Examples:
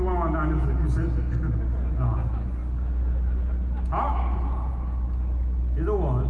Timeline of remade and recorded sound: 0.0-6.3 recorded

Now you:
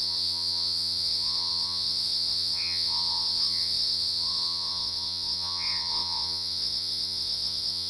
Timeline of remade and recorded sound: 0.0-7.9 remade

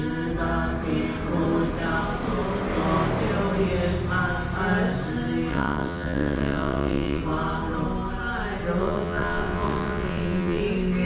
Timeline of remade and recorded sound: 0.0-5.5 recorded; 5.5-7.2 remade; 7.2-8.8 recorded; 8.8-10.6 remade; 10.6-11.1 recorded

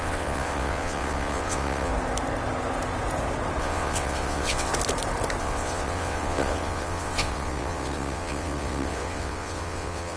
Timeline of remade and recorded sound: 0.0-1.9 remade; 1.9-3.6 recorded; 3.6-4.7 remade; 4.7-5.4 recorded; 5.4-10.2 remade

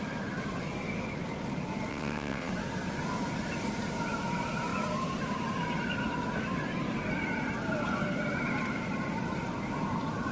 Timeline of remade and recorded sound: 0.0-1.9 recorded; 1.9-2.5 remade; 2.5-10.3 recorded

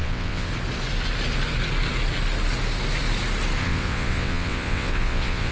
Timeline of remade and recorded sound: 0.0-0.5 remade; 0.5-3.6 recorded; 3.6-5.5 remade